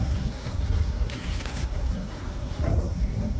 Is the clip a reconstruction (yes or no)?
yes